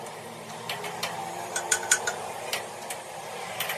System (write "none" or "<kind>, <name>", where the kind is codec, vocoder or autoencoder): vocoder, BigVGAN v2